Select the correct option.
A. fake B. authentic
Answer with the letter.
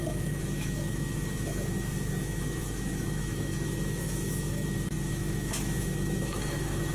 A